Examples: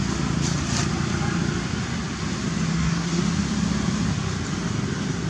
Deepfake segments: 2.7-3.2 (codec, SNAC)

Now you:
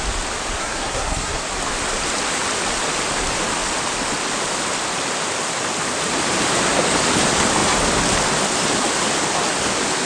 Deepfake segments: 0.6-1.4 (codec, SNAC)

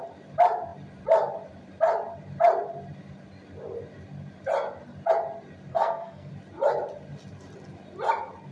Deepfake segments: 5.7-6.3 (codec, SNAC)

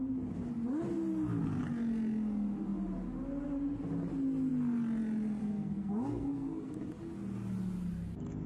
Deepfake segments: 5.4-6.7 (codec, SNAC)

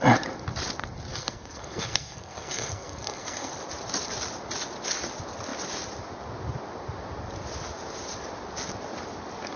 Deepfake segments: 1.1-3.5 (codec, SNAC)

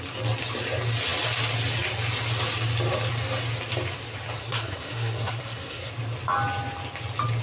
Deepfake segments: 4.4-5.9 (codec, SNAC)

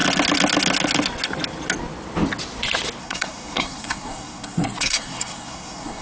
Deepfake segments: 3.0-6.0 (codec, SNAC)

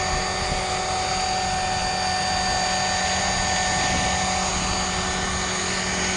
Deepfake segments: none